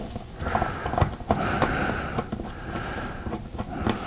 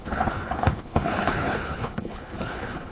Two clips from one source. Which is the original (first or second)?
first